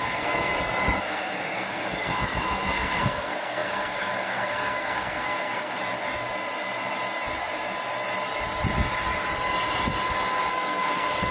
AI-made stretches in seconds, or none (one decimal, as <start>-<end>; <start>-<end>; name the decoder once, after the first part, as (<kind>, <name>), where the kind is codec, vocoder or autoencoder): 0.0-0.5 (codec, SNAC); 1.0-5.8; 10.5-11.3

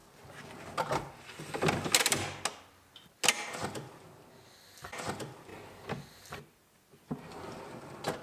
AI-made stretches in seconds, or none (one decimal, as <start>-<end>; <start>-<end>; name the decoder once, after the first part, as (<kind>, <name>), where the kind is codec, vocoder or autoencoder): none

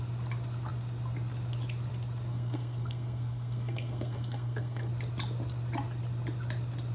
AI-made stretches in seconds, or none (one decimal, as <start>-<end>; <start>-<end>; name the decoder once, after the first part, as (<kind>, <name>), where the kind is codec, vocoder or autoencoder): 2.3-4.9 (codec, SNAC)

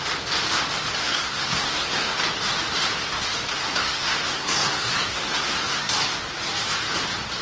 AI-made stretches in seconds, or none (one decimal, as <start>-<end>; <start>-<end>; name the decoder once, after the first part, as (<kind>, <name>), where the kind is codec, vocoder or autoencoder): 1.0-2.2 (codec, SNAC); 3.5-5.9